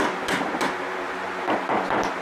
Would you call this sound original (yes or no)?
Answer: yes